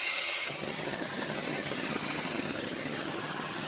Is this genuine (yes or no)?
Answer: no